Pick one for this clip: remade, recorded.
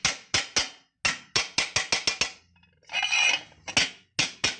recorded